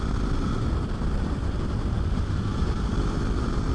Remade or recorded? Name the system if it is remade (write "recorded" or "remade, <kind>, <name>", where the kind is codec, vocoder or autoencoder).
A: remade, vocoder, BigVGAN v2